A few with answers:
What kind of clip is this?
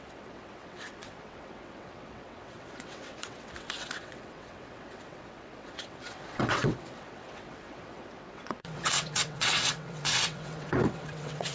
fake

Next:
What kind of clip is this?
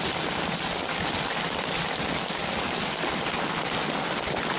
real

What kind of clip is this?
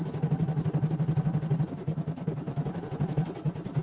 real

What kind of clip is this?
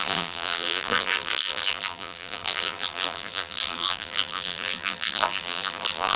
fake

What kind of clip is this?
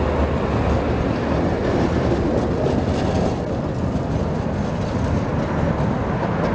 real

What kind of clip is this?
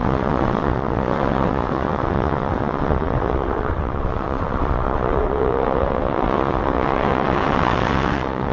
fake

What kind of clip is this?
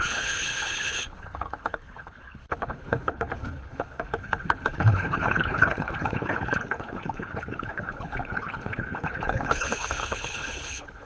fake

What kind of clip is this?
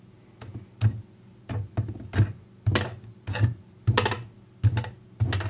real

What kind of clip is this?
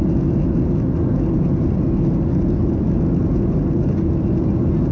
real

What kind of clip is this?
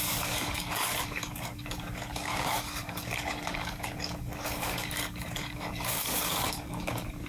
fake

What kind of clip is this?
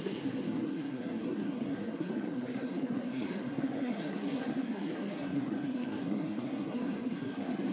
fake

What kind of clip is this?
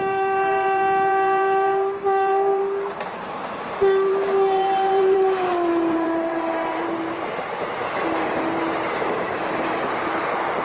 fake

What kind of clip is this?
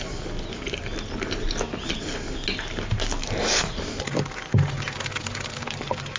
real